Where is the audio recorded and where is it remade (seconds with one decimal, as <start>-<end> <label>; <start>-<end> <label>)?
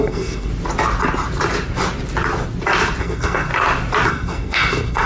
0.0-0.5 remade; 0.5-3.0 recorded; 3.0-3.5 remade; 3.5-4.1 recorded; 4.1-5.1 remade